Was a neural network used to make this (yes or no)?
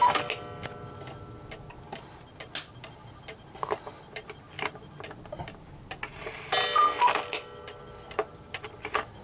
no